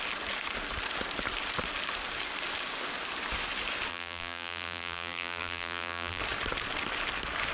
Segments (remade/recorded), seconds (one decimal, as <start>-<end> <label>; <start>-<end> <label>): 0.0-3.9 recorded; 3.9-6.2 remade; 6.2-7.5 recorded